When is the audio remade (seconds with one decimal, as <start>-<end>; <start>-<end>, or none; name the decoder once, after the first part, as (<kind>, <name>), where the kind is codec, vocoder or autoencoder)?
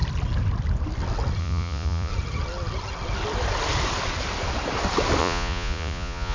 1.4-2.1 (vocoder, Vocos); 5.2-6.3